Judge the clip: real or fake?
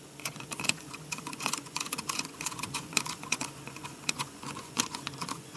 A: fake